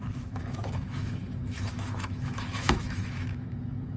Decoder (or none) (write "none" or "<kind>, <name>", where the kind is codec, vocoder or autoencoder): autoencoder, DAC-VAE